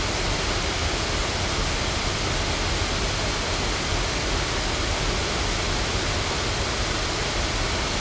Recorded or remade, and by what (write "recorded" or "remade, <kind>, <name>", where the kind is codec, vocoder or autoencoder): recorded